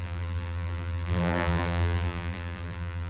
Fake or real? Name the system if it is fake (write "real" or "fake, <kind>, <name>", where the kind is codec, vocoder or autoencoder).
fake, vocoder, BigVGAN v2